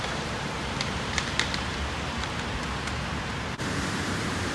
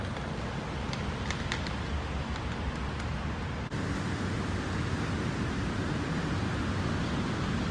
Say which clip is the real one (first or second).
second